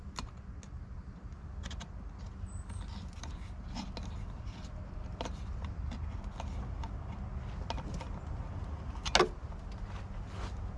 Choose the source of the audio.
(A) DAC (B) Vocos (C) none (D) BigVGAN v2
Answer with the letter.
C